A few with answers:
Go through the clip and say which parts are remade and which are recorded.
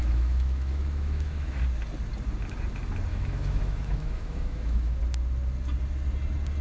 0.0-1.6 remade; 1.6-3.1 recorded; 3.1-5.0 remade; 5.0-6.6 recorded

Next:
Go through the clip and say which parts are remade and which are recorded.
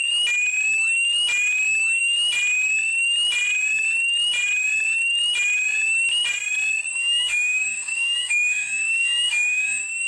0.0-6.9 recorded; 6.9-10.1 remade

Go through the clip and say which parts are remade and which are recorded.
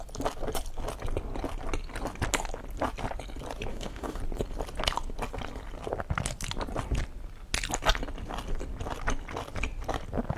0.0-3.7 recorded; 3.7-4.2 remade; 4.2-10.4 recorded